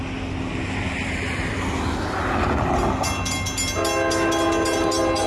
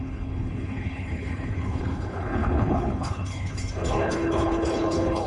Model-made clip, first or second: second